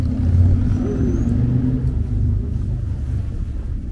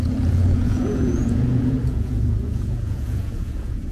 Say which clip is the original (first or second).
first